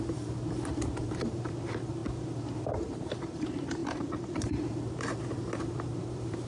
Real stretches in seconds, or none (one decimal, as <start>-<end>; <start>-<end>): none